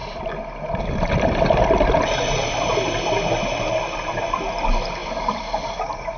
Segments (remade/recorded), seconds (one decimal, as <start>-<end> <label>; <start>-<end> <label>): 0.0-5.0 recorded; 5.0-5.7 remade; 5.7-6.2 recorded